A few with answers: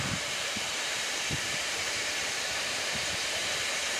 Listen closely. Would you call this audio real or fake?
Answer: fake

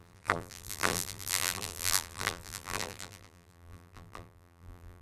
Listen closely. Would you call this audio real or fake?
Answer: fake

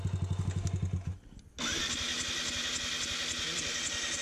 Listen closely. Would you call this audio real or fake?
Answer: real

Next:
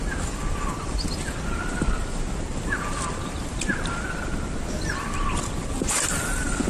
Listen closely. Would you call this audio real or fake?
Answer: real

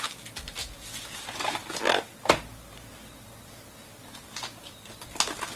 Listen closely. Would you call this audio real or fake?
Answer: real